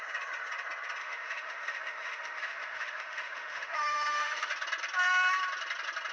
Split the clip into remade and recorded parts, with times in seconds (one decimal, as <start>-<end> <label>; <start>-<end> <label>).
0.0-1.0 recorded; 1.0-4.5 remade; 4.5-6.1 recorded